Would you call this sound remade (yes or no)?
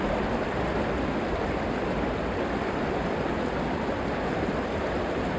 no